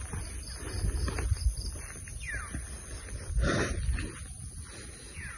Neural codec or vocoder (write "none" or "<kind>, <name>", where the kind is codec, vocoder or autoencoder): none